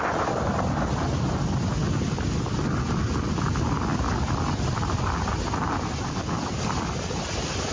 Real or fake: real